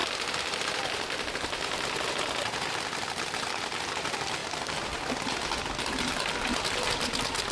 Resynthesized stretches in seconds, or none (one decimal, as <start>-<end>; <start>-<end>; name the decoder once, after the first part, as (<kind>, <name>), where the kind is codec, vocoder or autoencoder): none